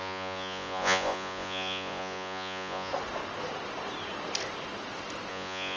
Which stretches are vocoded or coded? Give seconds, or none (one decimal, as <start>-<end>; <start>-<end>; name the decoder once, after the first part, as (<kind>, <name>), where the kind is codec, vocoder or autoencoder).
0.0-2.9 (vocoder, Vocos); 5.3-5.8